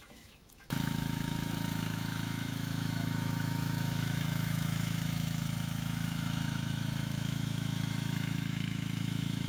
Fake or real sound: fake